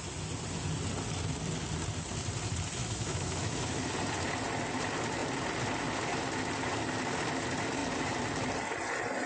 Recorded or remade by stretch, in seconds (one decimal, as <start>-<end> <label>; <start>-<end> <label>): 0.0-2.8 recorded; 2.8-3.8 remade; 3.8-9.3 recorded